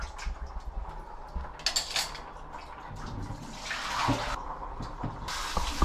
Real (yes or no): yes